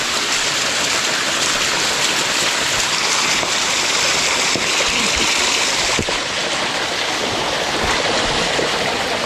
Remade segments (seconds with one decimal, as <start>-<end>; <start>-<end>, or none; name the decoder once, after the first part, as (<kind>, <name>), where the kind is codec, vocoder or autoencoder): none